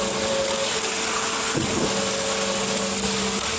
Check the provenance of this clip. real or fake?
real